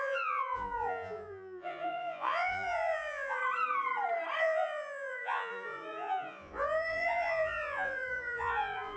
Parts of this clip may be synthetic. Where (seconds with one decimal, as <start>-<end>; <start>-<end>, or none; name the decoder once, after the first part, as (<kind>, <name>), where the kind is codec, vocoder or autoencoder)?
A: 0.0-3.4 (vocoder, Vocos); 4.4-9.0